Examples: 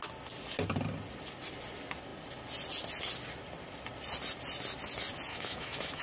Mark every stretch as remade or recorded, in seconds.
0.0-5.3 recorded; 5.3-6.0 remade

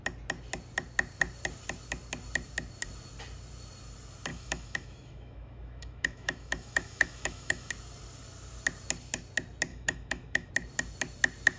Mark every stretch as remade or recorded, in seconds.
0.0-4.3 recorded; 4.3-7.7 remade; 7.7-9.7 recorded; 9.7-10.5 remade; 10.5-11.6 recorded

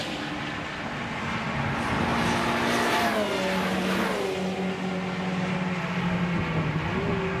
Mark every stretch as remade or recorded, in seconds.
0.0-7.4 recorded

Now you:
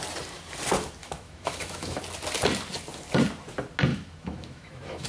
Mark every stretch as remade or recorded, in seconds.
0.0-1.0 recorded; 1.0-2.0 remade; 2.0-3.9 recorded; 3.9-5.1 remade